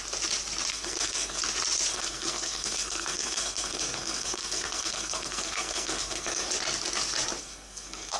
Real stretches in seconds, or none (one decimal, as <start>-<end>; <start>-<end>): 0.0-0.7; 1.4-1.9; 6.5-7.4

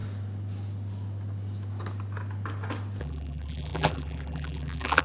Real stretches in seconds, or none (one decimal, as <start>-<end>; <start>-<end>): 0.0-3.0